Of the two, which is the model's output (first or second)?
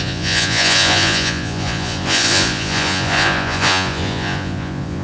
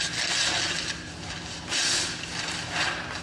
first